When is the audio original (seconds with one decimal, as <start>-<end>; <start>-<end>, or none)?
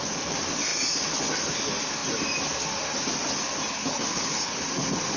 0.0-3.7; 4.6-5.2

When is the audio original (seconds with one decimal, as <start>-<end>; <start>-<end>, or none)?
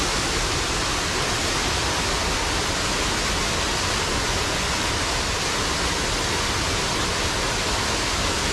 0.0-4.1; 4.8-8.5